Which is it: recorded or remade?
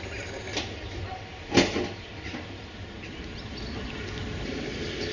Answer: recorded